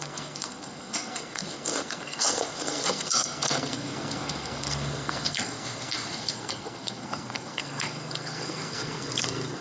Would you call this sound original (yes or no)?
no